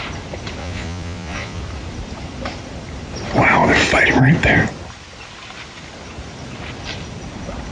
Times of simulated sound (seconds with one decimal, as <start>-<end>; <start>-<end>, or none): 0.6-1.6